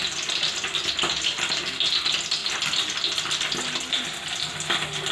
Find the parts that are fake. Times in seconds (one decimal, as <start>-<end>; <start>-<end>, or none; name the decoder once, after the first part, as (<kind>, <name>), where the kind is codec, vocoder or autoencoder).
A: none